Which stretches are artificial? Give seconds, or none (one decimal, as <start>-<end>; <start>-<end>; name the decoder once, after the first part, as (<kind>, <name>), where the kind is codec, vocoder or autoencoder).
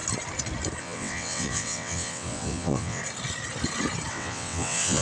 0.8-3.0 (vocoder, WaveNeXt); 4.1-5.0